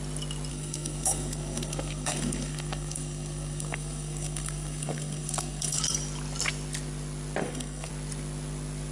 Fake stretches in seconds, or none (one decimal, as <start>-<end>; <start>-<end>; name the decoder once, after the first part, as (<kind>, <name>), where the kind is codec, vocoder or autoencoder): 0.5-5.8 (codec, SNAC); 7.4-7.9